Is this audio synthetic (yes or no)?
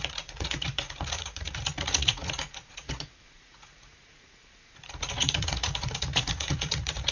yes